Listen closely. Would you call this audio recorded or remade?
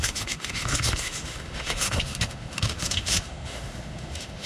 remade